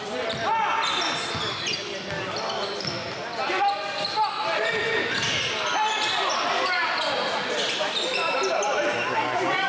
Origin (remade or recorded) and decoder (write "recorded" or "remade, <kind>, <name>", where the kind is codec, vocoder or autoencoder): recorded